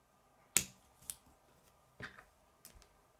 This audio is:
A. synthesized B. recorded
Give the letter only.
B